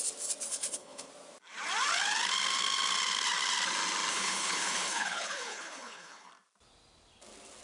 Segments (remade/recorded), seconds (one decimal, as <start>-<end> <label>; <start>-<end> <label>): 0.0-0.5 recorded; 0.5-1.1 remade; 1.1-4.1 recorded; 4.1-6.3 remade; 6.3-7.6 recorded